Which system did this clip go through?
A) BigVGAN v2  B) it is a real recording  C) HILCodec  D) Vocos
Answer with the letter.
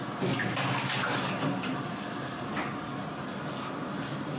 B